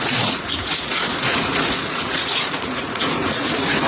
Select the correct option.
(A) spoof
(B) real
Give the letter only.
A